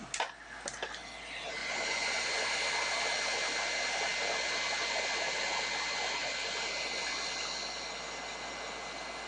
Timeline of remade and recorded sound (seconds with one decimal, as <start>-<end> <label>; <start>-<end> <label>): 0.0-1.6 recorded; 1.6-2.6 remade; 2.6-9.3 recorded